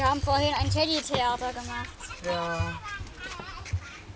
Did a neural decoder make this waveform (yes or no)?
no